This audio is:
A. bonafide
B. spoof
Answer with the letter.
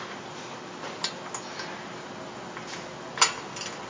A